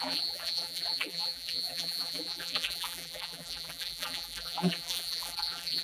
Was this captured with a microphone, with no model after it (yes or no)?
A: no